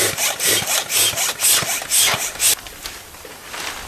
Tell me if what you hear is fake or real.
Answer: real